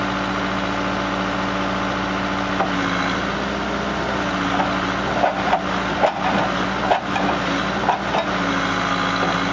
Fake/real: real